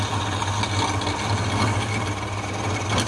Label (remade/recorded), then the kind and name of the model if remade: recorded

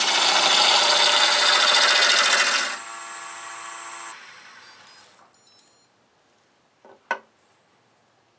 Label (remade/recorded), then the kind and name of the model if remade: recorded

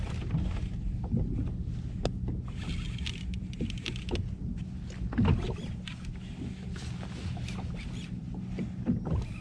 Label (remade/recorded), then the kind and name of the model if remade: recorded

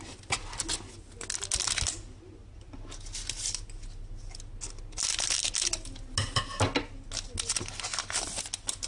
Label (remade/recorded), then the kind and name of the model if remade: recorded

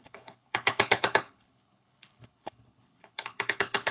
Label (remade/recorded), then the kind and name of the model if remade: remade, codec, HILCodec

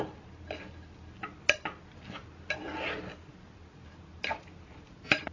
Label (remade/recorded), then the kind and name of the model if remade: recorded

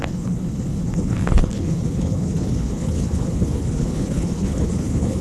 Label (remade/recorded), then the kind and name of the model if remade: remade, codec, HILCodec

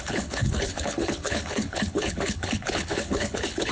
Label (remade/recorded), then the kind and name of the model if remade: remade, codec, HILCodec